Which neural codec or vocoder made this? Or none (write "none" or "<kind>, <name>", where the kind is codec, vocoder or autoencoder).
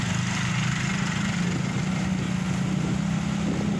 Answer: none